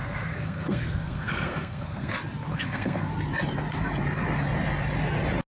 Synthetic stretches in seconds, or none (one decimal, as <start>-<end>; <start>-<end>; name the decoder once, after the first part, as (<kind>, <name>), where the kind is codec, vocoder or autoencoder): 0.0-2.1 (codec, SNAC); 2.5-3.1

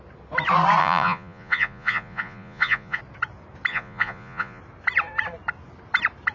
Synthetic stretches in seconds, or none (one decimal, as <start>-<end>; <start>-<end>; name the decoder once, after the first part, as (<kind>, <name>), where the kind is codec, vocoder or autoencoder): 0.8-3.0 (vocoder, Vocos); 3.7-4.6

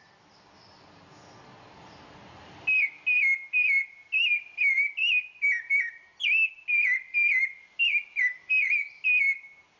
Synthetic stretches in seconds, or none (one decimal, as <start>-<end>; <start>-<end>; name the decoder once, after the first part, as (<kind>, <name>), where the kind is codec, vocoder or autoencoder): none

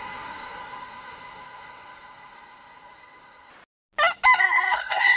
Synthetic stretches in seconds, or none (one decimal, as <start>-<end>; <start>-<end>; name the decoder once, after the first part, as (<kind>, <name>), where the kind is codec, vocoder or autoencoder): 0.0-3.5 (codec, SNAC); 4.4-5.2

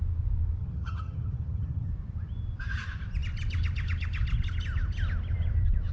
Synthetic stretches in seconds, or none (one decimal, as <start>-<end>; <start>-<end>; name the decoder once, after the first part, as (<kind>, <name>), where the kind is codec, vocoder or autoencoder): 0.6-1.9 (vocoder, HiFi-GAN)

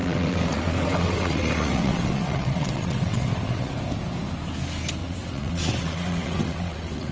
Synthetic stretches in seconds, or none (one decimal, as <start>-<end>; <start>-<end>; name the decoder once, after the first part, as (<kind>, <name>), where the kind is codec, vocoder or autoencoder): 0.0-3.7 (vocoder, WaveNeXt); 5.0-7.1